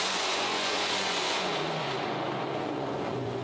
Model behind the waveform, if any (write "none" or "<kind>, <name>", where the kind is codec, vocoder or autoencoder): vocoder, Vocos